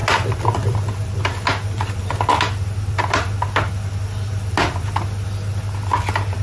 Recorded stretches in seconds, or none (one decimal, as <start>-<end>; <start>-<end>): 0.0-6.4

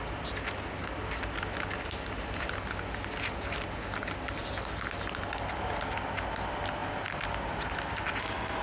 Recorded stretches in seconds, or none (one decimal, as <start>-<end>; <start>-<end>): 0.0-8.6